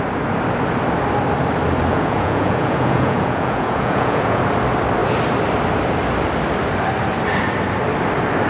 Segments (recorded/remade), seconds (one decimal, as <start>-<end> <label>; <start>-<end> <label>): 0.0-1.9 recorded; 1.9-4.4 remade; 4.4-8.5 recorded